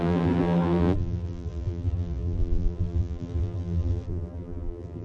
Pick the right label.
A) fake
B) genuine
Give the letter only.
A